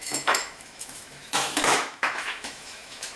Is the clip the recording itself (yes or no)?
no